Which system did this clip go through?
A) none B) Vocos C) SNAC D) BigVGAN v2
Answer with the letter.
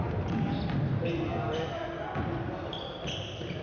A